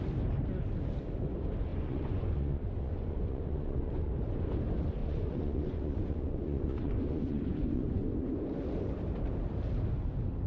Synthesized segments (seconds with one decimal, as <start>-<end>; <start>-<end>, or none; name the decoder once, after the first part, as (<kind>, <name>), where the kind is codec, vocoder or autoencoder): 1.7-4.1 (vocoder, Vocos); 5.0-8.3